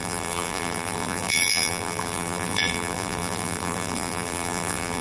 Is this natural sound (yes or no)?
no